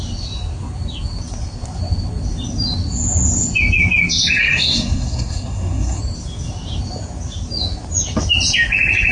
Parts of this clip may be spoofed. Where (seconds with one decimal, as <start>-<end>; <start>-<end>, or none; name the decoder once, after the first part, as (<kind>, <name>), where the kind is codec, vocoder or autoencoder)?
4.4-6.0 (codec, SNAC)